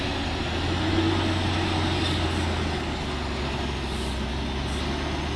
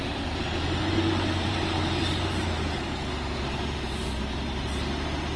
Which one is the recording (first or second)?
first